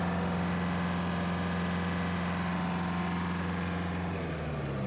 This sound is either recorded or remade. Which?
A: recorded